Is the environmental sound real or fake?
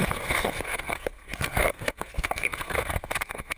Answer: fake